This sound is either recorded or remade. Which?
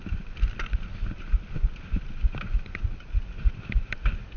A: recorded